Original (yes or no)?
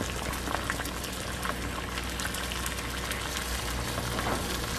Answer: yes